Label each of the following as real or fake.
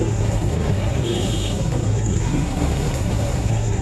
fake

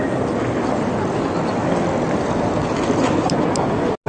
real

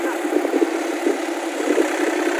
real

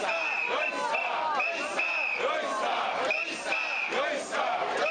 real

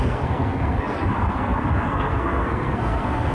fake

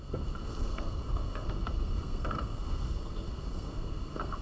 fake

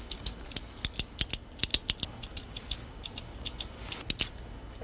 real